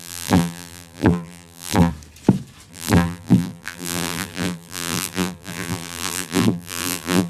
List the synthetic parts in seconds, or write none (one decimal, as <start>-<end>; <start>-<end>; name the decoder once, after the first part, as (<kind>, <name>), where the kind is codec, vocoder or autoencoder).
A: 0.0-1.9 (vocoder, BigVGAN v2); 2.7-7.3